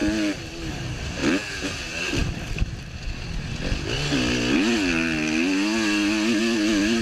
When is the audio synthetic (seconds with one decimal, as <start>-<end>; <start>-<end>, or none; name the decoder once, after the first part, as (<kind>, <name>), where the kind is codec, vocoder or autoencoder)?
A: none